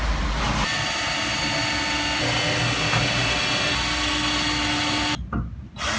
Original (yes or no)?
yes